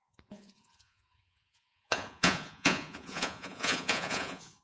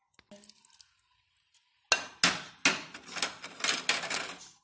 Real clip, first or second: second